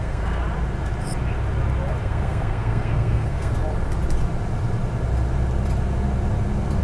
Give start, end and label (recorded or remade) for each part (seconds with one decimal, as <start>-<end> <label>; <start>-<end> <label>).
0.0-0.4 remade; 0.4-2.0 recorded; 2.0-3.5 remade; 3.5-6.8 recorded